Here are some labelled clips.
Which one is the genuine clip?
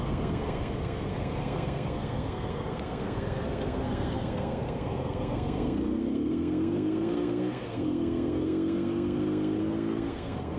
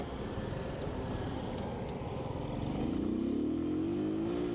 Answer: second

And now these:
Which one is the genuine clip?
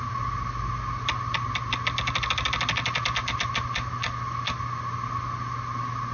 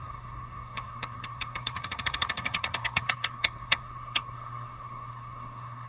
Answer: first